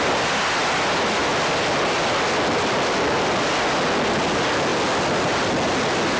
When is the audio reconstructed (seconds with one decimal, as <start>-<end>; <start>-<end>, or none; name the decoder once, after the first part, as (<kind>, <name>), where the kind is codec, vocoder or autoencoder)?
none